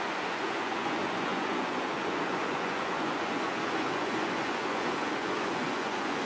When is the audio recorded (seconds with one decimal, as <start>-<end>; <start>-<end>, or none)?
none